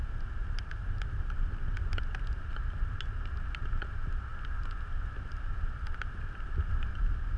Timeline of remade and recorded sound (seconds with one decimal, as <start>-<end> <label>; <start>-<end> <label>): 0.0-7.4 recorded